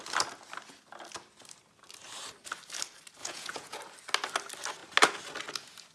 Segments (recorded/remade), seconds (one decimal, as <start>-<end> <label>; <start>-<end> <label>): 0.0-3.2 recorded; 3.2-3.8 remade; 3.8-5.9 recorded